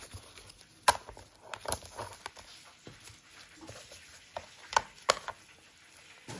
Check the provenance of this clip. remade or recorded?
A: recorded